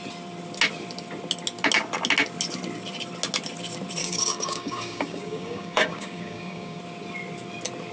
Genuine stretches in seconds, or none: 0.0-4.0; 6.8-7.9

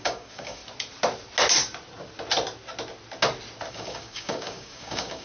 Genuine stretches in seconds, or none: 0.6-3.7